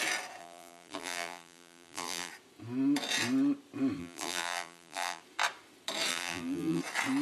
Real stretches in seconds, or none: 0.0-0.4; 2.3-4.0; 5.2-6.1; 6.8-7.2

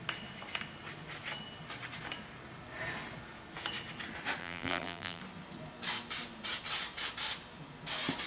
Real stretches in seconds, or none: 0.0-4.4; 5.2-8.3